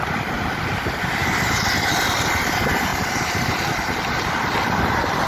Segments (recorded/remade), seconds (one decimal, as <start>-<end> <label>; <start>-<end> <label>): 0.0-2.9 recorded; 2.9-3.5 remade; 3.5-5.3 recorded

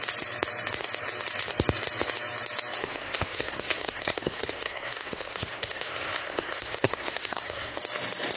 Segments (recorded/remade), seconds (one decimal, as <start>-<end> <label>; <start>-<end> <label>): 0.0-2.8 recorded; 2.8-7.8 remade; 7.8-8.4 recorded